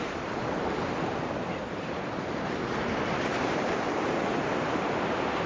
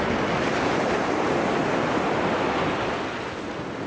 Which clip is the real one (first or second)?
second